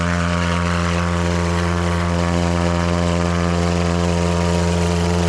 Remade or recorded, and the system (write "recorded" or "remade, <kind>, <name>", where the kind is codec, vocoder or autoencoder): remade, vocoder, Vocos